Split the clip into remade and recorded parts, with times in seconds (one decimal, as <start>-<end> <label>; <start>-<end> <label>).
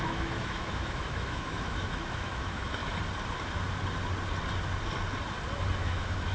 0.0-2.8 remade; 2.8-5.8 recorded; 5.8-6.3 remade